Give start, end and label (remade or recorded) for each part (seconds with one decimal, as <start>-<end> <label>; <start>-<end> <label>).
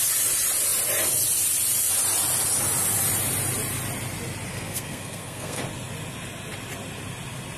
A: 0.0-4.5 recorded; 4.5-5.6 remade; 5.6-7.6 recorded